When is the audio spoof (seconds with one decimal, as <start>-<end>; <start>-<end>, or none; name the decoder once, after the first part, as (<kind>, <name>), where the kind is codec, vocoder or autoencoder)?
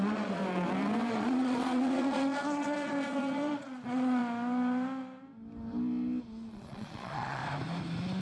0.0-0.4 (vocoder, Vocos); 1.1-4.2; 6.5-7.4